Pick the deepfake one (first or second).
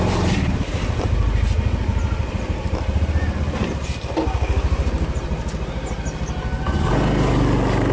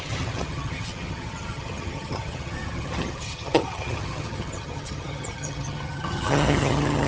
second